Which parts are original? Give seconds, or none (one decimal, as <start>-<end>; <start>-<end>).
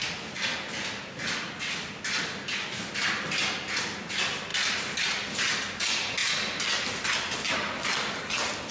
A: 0.0-8.7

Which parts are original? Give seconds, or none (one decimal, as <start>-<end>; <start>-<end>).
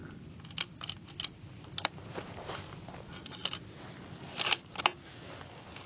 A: 0.0-5.9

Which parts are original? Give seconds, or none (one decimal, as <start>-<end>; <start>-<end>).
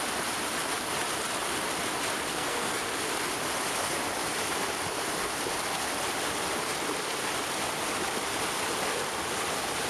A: 0.0-2.3; 2.8-9.9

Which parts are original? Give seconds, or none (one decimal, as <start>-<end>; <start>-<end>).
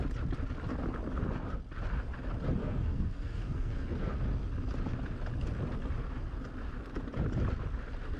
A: 0.0-2.6; 4.1-8.2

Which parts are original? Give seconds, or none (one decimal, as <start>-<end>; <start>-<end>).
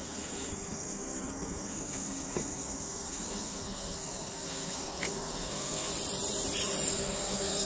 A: 5.9-6.9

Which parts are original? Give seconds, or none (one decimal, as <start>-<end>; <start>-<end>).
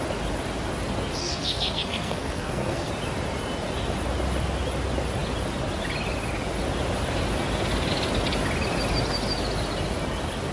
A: 0.0-1.2; 2.9-10.5